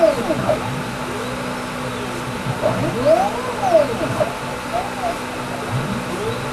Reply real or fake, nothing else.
real